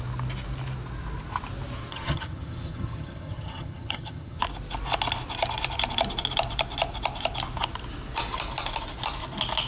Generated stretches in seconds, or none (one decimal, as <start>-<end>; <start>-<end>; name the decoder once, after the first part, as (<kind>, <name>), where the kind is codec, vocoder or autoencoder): 1.9-4.4 (vocoder, HiFi-GAN)